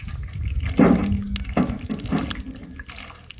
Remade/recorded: recorded